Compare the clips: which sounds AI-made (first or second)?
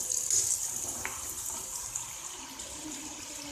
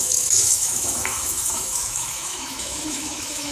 second